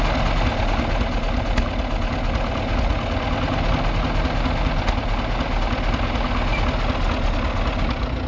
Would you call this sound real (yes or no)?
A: yes